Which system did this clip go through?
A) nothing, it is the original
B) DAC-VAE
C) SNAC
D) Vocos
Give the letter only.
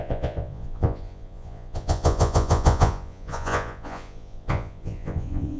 D